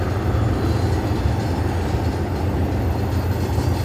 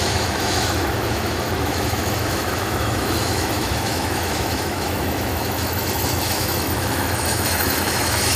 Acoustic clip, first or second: first